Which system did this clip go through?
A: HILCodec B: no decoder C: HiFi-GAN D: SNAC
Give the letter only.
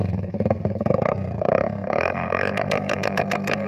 D